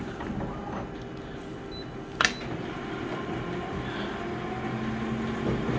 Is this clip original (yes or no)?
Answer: yes